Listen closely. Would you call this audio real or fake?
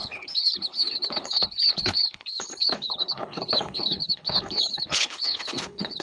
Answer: fake